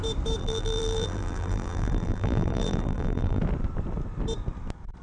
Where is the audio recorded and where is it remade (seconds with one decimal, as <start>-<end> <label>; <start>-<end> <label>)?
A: 0.0-0.4 recorded; 0.4-3.4 remade; 3.4-5.0 recorded